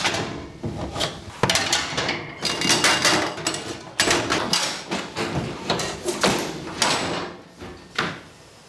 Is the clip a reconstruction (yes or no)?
no